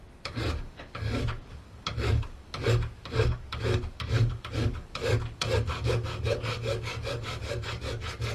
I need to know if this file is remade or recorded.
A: remade